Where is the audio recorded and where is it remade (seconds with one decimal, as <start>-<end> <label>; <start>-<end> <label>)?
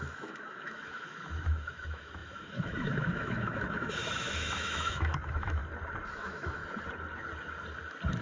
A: 0.0-5.6 remade; 5.6-6.1 recorded; 6.1-6.6 remade; 6.6-8.2 recorded